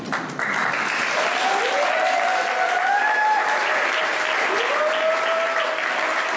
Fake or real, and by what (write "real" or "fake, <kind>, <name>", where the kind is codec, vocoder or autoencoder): real